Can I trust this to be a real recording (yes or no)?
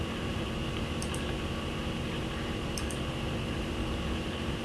no